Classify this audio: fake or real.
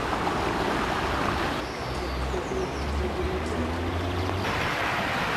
real